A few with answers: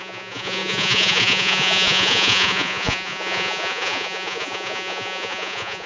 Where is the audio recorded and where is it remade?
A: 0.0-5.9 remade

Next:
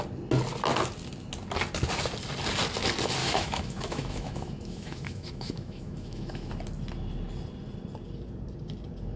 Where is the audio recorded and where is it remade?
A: 0.0-3.2 recorded; 3.2-6.5 remade; 6.5-9.2 recorded

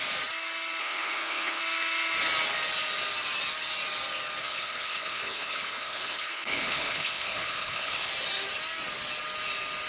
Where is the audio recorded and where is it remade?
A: 0.0-0.8 recorded; 0.8-1.6 remade; 1.6-4.4 recorded; 4.4-8.1 remade; 8.1-9.9 recorded

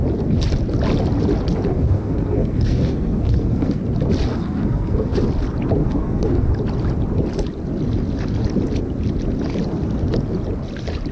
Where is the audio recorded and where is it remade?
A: 0.0-1.7 recorded; 1.7-3.8 remade; 3.8-4.3 recorded; 4.3-5.2 remade; 5.2-5.8 recorded; 5.8-6.5 remade; 6.5-11.1 recorded

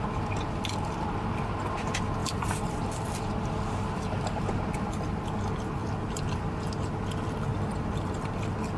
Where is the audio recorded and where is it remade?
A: 0.0-2.2 recorded; 2.2-4.5 remade; 4.5-5.8 recorded; 5.8-6.5 remade; 6.5-7.5 recorded; 7.5-8.1 remade; 8.1-8.8 recorded

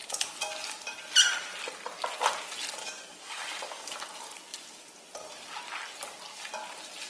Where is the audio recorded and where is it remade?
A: 0.0-2.8 recorded; 2.8-3.9 remade; 3.9-7.1 recorded

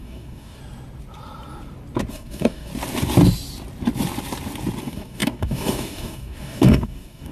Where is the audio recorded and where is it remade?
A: 0.0-0.6 remade; 0.6-2.1 recorded; 2.1-2.7 remade; 2.7-4.8 recorded; 4.8-7.3 remade

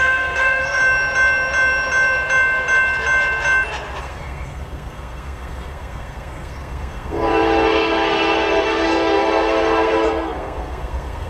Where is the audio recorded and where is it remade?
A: 0.0-0.8 remade; 0.8-4.0 recorded; 4.0-11.3 remade